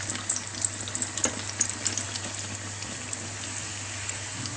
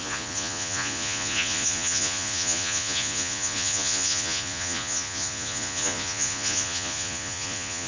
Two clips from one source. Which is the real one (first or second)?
first